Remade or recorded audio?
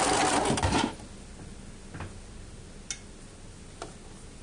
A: recorded